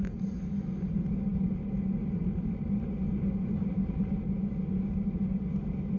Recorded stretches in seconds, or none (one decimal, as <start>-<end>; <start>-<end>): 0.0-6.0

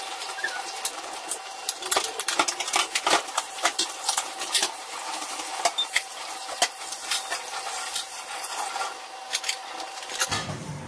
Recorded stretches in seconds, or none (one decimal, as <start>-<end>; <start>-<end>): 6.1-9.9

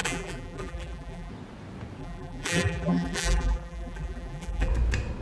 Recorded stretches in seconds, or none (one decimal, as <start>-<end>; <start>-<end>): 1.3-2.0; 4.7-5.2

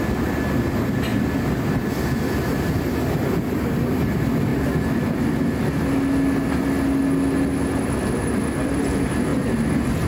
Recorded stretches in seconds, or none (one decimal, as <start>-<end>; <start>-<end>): 0.0-10.1

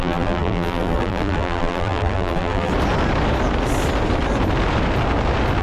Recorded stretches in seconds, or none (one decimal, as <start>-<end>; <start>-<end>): 2.7-5.6